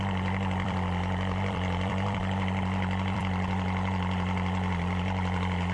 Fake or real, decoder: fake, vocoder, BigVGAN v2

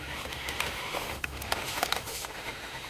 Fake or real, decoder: fake, autoencoder, DAC-VAE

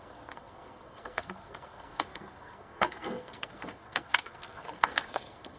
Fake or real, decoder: fake, codec, SNAC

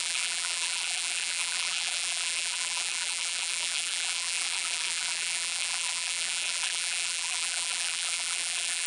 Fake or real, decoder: fake, vocoder, BigVGAN v2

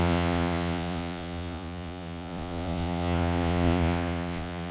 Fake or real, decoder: fake, vocoder, Vocos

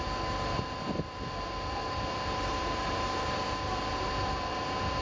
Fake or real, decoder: fake, vocoder, BigVGAN v2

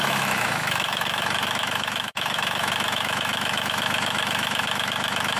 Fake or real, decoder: fake, autoencoder, DAC-VAE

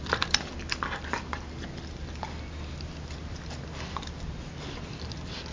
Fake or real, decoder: real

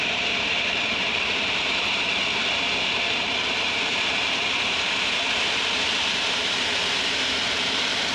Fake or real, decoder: fake, vocoder, BigVGAN v2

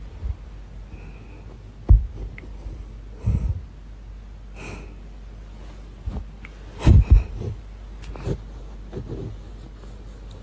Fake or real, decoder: real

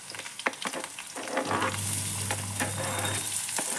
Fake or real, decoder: real